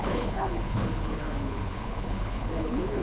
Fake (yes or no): yes